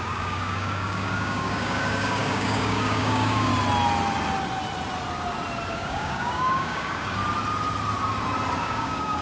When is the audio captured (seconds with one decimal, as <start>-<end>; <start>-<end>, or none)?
3.5-5.7; 7.2-8.6